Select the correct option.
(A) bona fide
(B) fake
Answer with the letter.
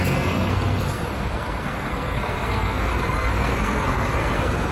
B